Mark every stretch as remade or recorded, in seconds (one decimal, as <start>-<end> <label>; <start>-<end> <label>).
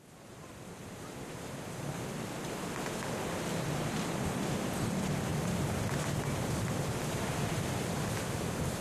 0.0-8.8 remade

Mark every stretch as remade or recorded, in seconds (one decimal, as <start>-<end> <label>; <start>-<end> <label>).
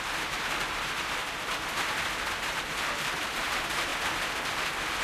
0.0-1.2 remade; 1.2-2.4 recorded; 2.4-3.9 remade; 3.9-5.0 recorded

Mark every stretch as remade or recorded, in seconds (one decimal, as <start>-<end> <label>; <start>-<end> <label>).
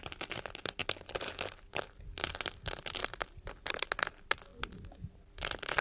0.0-3.0 recorded; 3.0-3.7 remade; 3.7-5.8 recorded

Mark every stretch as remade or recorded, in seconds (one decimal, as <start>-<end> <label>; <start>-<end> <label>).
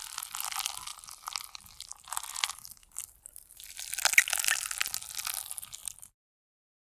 0.0-0.9 recorded; 0.9-1.6 remade; 1.6-3.0 recorded; 3.0-4.1 remade; 4.1-5.8 recorded; 5.8-6.9 remade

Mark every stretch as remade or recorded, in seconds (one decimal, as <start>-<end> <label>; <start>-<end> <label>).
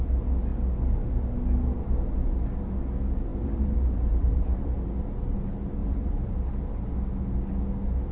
0.0-3.3 recorded; 3.3-4.8 remade; 4.8-5.8 recorded; 5.8-6.3 remade; 6.3-8.1 recorded